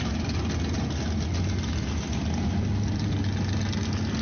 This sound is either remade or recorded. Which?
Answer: recorded